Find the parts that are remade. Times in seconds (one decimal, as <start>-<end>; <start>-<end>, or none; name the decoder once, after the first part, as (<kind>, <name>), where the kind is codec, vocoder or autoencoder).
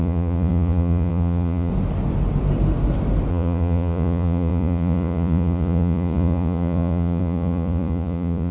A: 0.0-1.7 (vocoder, Vocos); 3.3-8.5